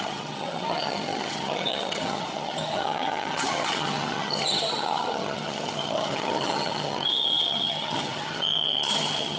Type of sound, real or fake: fake